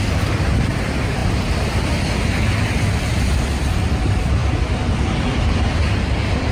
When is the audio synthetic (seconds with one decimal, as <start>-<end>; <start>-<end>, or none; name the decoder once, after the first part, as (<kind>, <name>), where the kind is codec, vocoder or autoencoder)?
none